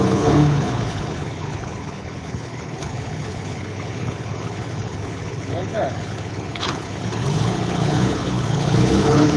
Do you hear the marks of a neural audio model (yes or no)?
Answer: yes